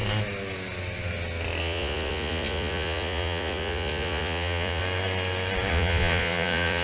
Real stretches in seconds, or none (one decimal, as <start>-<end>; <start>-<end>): 0.0-1.6; 4.8-5.7